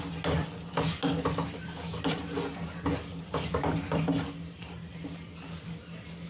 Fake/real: real